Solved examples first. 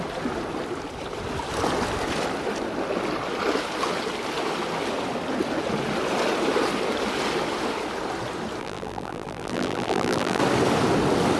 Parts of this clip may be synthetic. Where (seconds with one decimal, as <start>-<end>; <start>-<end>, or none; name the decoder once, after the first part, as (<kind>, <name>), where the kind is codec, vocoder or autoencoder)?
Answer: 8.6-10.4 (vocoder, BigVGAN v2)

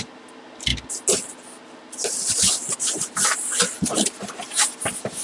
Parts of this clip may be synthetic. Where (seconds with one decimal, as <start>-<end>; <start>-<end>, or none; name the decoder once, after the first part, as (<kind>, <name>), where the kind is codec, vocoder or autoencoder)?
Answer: none

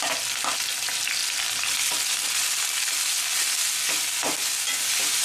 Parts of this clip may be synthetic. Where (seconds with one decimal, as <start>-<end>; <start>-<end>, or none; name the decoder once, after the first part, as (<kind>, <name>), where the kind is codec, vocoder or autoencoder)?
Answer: none